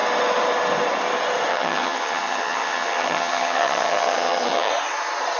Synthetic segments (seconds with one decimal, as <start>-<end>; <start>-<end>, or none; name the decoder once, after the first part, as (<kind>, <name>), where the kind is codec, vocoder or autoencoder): 1.5-4.7 (vocoder, HiFi-GAN)